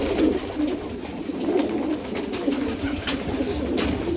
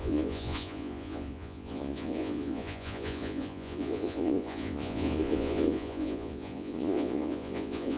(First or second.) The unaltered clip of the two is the first